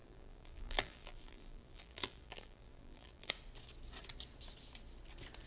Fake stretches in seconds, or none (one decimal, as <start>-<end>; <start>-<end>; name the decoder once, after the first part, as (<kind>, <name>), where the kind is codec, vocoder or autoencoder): 0.0-3.3 (vocoder, BigVGAN v2)